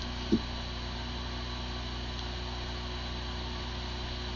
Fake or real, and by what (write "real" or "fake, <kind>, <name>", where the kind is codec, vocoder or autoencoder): real